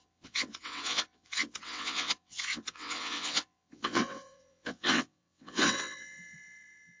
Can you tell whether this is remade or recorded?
remade